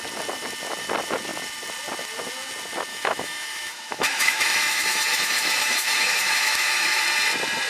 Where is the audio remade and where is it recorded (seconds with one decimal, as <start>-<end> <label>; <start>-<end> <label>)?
0.0-2.9 recorded; 2.9-7.0 remade; 7.0-7.7 recorded